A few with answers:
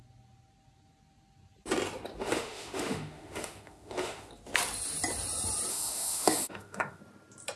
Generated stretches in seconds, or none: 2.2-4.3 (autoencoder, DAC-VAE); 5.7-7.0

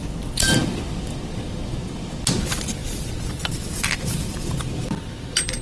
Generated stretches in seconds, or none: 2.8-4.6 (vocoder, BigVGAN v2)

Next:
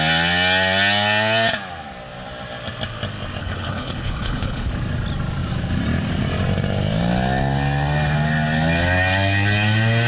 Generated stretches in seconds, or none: 3.4-4.7 (codec, HILCodec)